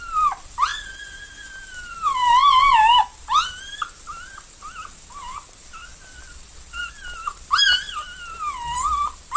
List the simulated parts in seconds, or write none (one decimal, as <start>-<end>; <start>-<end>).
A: 0.7-1.5